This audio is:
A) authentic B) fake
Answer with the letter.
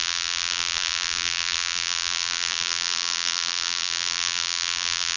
B